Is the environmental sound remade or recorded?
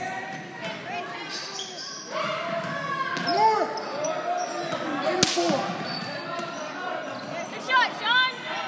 recorded